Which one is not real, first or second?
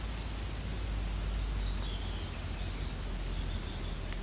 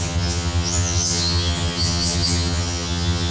second